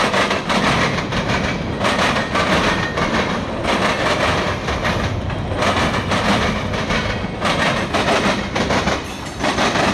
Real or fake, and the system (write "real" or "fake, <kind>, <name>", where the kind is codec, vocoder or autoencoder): fake, vocoder, BigVGAN v2